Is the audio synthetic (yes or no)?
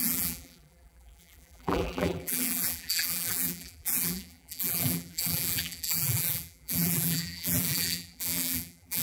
yes